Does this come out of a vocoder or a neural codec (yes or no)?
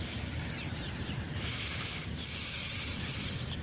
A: yes